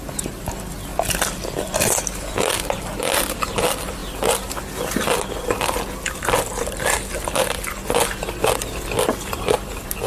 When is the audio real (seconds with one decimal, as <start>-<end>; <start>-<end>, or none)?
0.0-10.1